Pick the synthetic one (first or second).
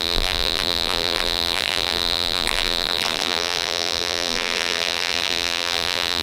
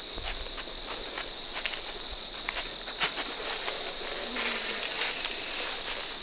first